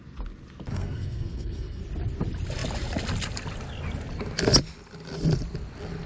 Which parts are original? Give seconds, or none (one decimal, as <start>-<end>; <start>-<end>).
0.0-0.7; 1.8-6.1